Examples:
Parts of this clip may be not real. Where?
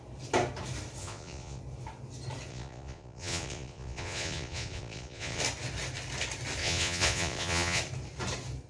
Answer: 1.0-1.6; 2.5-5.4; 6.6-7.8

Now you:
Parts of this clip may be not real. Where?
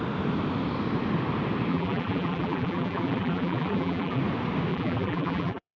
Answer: 1.7-4.2; 4.7-5.8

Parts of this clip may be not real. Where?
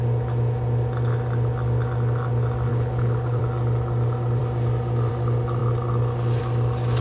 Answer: 2.7-3.4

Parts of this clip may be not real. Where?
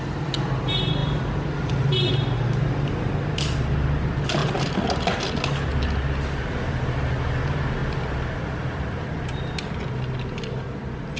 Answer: 1.0-2.1; 7.8-8.9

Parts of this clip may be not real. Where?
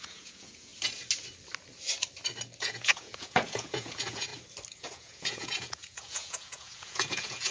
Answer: 0.0-0.7; 2.6-4.3; 4.8-7.5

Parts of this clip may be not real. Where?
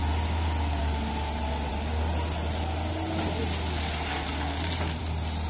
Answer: none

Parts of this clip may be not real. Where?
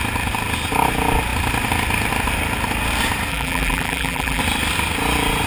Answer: 3.3-4.4